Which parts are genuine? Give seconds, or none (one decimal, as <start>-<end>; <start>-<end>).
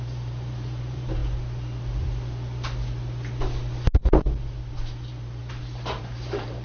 1.2-4.7; 5.4-6.0